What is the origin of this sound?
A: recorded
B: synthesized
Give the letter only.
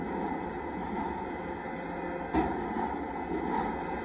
A